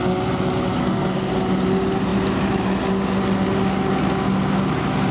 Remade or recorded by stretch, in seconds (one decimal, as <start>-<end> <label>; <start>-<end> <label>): 0.0-0.8 recorded; 0.8-1.3 remade; 1.3-5.1 recorded